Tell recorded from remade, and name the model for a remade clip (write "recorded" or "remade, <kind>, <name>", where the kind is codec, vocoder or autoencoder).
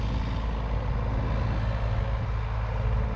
recorded